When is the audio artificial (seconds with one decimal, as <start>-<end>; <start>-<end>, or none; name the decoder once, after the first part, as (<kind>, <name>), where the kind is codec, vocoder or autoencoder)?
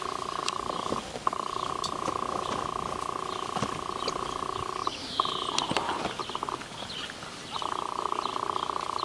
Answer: 0.4-1.7 (codec, DAC)